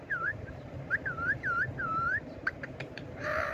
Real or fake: fake